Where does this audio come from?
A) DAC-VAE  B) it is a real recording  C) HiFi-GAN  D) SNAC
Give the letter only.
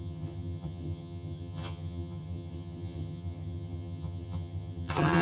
C